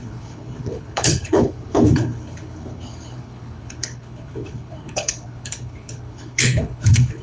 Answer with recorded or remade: remade